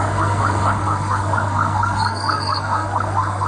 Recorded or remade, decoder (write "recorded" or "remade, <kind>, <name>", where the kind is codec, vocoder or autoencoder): remade, codec, SNAC